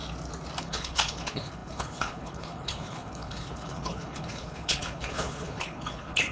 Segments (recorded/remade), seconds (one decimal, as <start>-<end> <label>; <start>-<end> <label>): 0.0-0.6 recorded; 0.6-6.3 remade